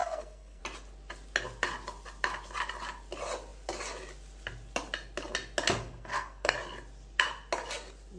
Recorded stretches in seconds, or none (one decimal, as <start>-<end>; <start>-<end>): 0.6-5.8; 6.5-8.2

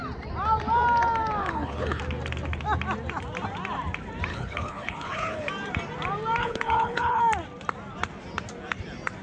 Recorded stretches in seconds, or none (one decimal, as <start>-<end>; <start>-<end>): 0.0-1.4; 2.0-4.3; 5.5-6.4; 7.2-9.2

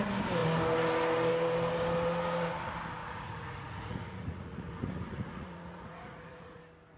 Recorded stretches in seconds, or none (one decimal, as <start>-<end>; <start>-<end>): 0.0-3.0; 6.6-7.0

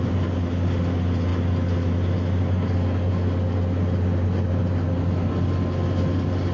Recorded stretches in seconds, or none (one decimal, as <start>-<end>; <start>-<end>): 0.0-6.5

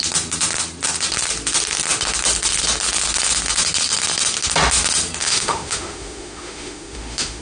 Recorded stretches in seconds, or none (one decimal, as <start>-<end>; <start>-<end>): 0.0-5.2

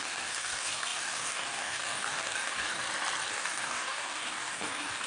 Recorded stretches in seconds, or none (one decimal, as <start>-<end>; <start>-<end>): 2.8-3.3

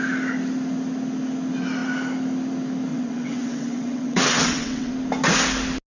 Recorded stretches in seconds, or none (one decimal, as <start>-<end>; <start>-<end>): 0.0-2.9; 4.9-5.9

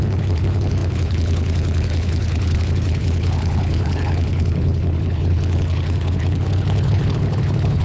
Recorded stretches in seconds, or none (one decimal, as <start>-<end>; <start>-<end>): none